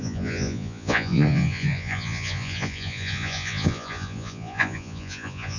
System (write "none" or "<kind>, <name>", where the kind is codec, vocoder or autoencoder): vocoder, Vocos